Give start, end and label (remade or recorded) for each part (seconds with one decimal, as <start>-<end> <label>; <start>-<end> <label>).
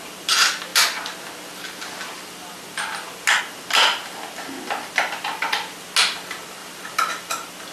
0.0-7.7 recorded